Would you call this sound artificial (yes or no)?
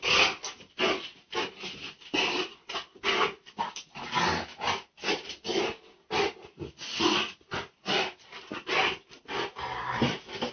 no